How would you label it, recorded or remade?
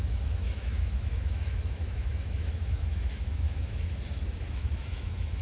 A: remade